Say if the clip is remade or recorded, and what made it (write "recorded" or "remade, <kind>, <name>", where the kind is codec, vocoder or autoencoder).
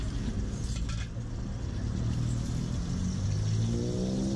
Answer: recorded